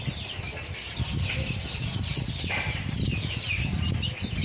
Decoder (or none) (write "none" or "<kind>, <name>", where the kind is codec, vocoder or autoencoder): none